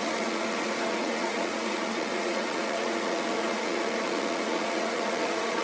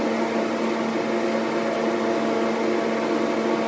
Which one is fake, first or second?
first